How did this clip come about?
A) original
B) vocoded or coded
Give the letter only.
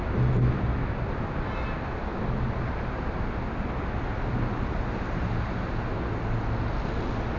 A